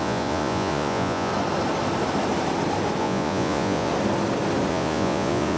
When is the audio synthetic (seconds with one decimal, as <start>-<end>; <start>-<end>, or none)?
0.0-1.3; 3.0-3.9; 4.7-5.6